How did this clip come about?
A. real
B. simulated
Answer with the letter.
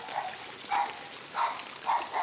A